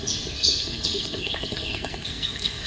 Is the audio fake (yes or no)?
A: yes